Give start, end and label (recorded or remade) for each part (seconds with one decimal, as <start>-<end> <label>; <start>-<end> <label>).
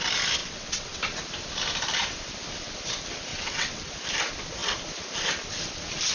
0.0-0.4 recorded; 0.4-1.0 remade; 1.0-3.3 recorded; 3.3-3.9 remade; 3.9-6.1 recorded